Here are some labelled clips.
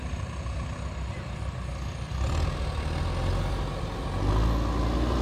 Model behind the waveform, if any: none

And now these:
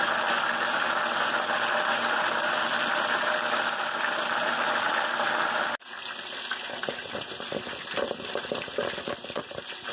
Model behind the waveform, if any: none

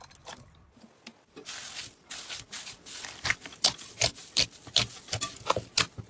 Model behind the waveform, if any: none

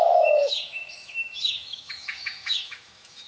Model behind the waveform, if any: autoencoder, DAC-VAE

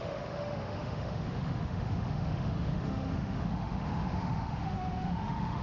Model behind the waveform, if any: autoencoder, DAC-VAE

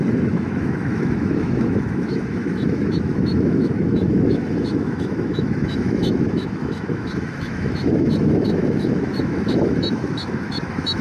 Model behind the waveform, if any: autoencoder, DAC-VAE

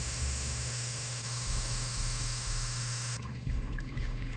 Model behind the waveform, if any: autoencoder, DAC-VAE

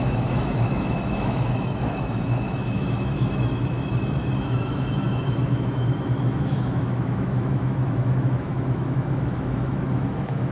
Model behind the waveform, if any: autoencoder, DAC-VAE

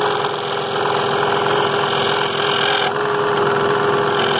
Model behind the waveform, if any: none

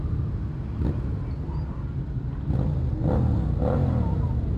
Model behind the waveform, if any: none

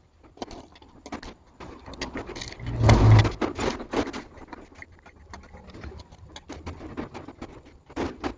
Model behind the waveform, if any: none